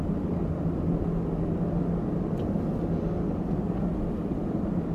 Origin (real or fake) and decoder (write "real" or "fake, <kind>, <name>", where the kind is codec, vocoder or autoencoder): real